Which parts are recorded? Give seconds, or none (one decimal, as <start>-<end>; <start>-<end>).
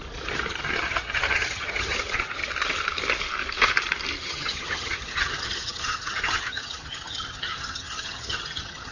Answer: 0.0-0.5; 2.4-4.2